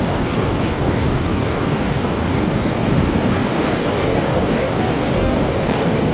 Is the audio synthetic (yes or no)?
yes